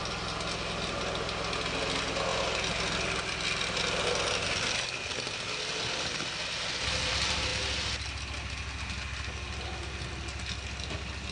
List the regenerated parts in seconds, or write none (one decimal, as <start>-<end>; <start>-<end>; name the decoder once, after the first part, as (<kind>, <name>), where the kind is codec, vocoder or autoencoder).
none